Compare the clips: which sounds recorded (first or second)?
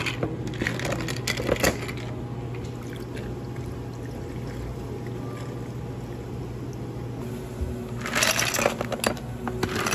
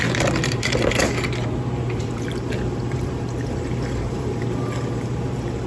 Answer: first